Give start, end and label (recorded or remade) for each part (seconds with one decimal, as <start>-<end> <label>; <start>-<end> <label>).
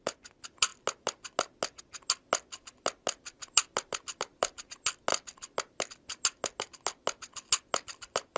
0.0-3.4 recorded; 3.4-4.6 remade; 4.6-8.4 recorded